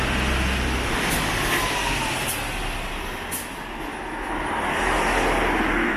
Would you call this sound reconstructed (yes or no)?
no